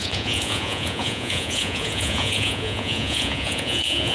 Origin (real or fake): fake